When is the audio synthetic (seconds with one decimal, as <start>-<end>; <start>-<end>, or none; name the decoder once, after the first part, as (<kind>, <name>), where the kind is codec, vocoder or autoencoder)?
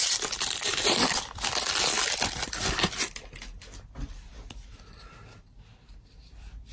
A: none